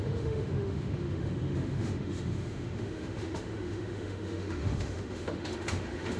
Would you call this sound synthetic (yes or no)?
yes